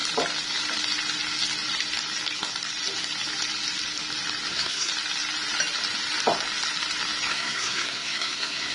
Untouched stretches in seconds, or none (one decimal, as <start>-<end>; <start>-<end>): 0.0-4.5; 4.9-7.3